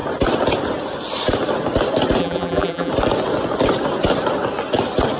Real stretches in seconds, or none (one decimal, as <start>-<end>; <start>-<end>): 0.0-2.2; 2.9-5.2

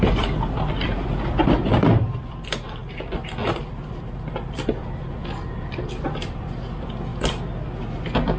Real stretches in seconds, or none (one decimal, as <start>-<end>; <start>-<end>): 2.8-3.5; 7.1-7.8

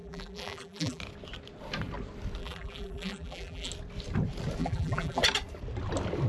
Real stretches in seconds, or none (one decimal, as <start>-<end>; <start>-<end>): 1.0-2.4; 3.7-4.6; 5.2-6.3